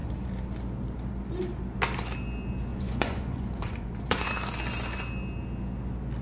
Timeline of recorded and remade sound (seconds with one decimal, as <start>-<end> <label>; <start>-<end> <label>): 0.0-2.7 recorded; 2.7-4.3 remade; 4.3-6.2 recorded